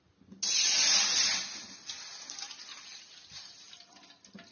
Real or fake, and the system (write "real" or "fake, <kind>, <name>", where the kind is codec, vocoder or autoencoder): real